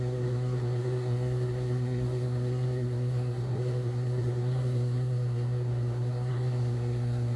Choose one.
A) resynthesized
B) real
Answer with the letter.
A